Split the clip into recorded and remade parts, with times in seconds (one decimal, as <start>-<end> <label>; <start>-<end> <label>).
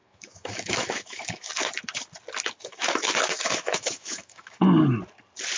0.0-1.5 remade; 1.5-2.6 recorded; 2.6-4.6 remade; 4.6-5.6 recorded